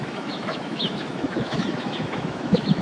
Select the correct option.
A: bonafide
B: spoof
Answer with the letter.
B